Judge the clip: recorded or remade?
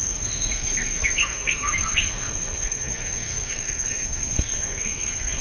remade